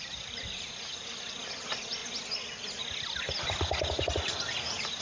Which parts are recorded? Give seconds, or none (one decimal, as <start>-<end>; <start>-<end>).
2.0-5.0